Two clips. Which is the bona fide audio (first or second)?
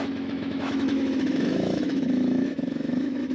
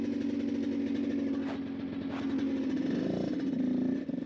second